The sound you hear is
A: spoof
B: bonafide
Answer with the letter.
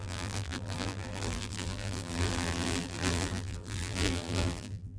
A